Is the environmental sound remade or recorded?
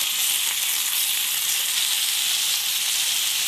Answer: recorded